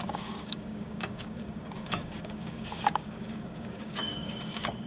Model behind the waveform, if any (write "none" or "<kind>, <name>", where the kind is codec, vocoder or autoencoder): codec, DAC